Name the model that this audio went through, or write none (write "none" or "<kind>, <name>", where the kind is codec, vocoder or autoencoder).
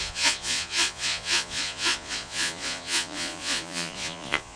vocoder, Vocos